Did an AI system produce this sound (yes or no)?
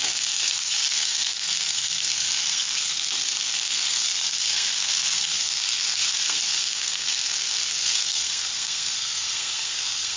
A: yes